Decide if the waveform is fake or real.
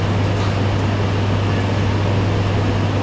real